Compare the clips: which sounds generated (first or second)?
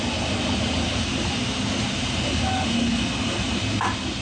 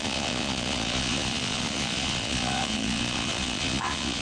second